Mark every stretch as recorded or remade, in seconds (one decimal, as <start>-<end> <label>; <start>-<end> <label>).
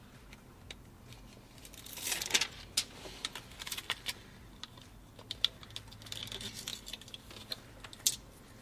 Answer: 0.0-8.6 recorded